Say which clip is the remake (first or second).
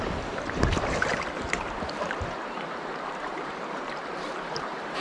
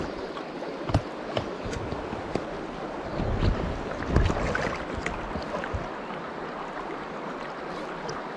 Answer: first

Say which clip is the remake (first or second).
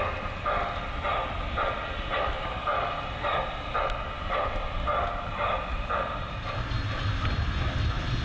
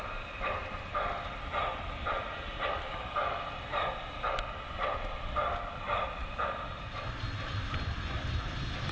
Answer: second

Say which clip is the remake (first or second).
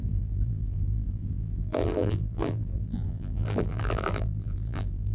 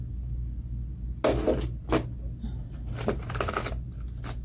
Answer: first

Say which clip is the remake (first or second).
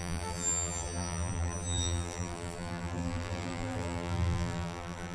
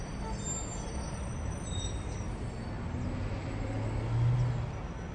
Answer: first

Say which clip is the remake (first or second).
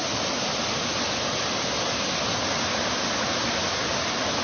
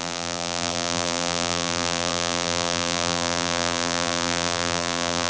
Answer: second